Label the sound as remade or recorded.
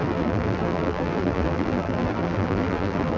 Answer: remade